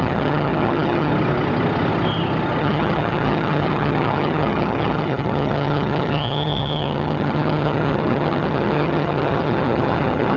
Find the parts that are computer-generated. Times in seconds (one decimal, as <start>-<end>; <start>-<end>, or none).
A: 0.0-1.1; 2.6-10.4